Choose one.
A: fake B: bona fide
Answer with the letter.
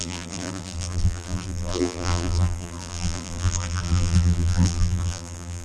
A